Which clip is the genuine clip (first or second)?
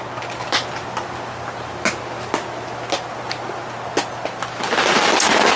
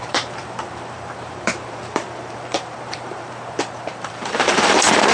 first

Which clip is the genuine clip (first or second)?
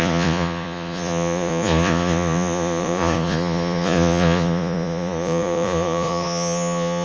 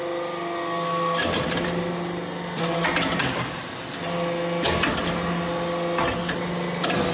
second